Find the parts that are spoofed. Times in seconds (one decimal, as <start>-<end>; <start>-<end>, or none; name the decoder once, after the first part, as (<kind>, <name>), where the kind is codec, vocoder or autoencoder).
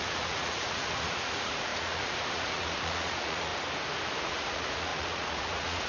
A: 0.0-3.5 (vocoder, Vocos); 4.2-5.9